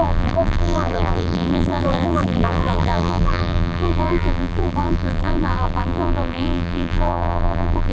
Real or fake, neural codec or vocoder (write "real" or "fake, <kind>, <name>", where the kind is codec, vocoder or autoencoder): fake, vocoder, BigVGAN v2